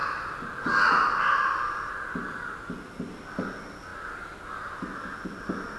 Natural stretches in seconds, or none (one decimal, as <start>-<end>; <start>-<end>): 0.0-5.8